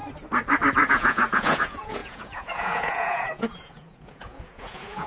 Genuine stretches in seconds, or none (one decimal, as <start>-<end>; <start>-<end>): 0.0-0.9